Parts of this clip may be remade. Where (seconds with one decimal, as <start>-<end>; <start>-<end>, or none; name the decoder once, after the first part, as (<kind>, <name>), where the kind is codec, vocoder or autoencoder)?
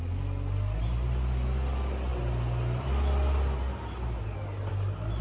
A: none